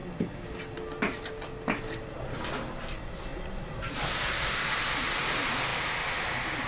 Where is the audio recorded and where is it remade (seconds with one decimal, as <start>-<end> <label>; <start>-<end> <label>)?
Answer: 0.0-6.7 recorded